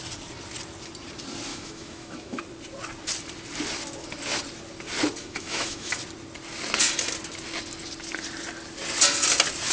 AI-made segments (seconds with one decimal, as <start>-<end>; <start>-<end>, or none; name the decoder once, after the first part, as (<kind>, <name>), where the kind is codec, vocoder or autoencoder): 1.5-2.4 (autoencoder, DAC-VAE); 5.2-5.9